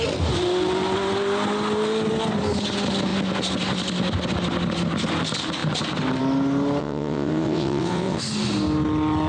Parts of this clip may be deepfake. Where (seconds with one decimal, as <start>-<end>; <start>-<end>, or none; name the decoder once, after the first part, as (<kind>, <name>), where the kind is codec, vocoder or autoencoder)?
6.8-8.2 (vocoder, WaveNeXt)